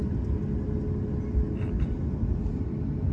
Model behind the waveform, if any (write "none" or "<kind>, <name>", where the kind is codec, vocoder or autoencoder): none